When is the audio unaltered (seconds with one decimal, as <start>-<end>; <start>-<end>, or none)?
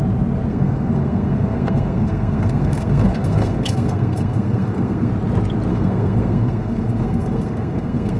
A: 0.0-0.5; 5.1-5.7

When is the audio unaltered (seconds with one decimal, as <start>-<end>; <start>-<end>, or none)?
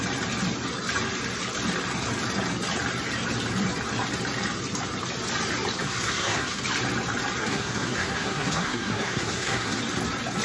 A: 0.0-5.8; 6.6-7.4; 9.8-10.4